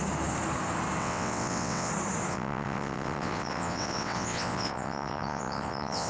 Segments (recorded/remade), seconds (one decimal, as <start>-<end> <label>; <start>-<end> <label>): 0.0-1.0 recorded; 1.0-1.9 remade; 1.9-2.3 recorded; 2.3-6.1 remade